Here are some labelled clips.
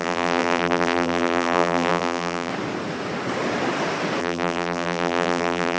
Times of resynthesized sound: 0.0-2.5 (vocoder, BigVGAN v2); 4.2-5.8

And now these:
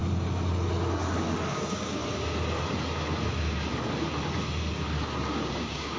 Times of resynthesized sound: 1.5-2.0 (codec, DAC); 5.4-6.0

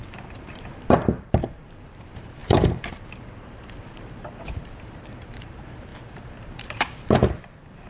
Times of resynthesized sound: 0.0-7.9 (vocoder, BigVGAN v2)